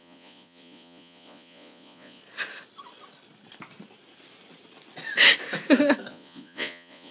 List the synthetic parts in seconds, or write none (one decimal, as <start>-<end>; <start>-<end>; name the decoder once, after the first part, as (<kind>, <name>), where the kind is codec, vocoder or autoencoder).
0.0-2.2 (vocoder, Vocos); 6.1-7.1